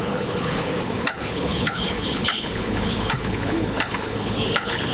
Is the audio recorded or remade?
remade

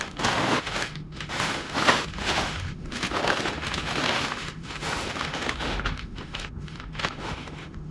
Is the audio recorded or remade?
remade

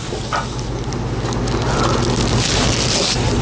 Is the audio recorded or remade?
recorded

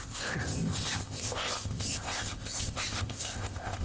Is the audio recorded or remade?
remade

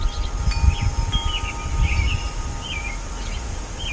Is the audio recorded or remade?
recorded